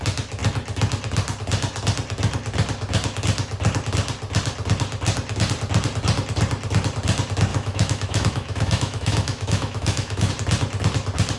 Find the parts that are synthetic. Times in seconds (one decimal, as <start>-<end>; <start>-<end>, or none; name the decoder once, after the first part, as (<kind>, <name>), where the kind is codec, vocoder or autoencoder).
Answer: 7.5-10.3 (autoencoder, DAC-VAE)